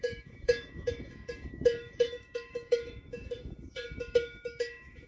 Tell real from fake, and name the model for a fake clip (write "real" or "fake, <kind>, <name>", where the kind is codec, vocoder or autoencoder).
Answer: fake, autoencoder, DAC-VAE